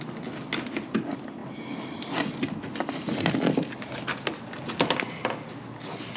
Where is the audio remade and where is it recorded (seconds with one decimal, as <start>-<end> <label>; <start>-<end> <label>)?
0.0-6.2 recorded